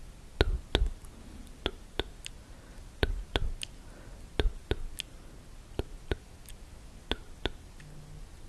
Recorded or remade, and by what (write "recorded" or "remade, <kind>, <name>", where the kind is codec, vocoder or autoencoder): recorded